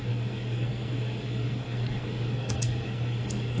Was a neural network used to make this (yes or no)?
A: yes